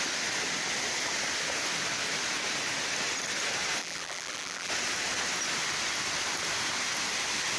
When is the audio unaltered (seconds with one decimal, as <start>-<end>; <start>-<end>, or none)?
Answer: 0.0-3.8; 4.7-7.6